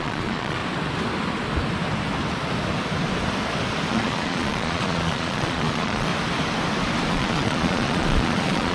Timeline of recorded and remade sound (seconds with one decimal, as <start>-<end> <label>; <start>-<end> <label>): 0.0-0.6 remade; 0.6-3.9 recorded; 3.9-6.1 remade; 6.1-7.1 recorded; 7.1-8.7 remade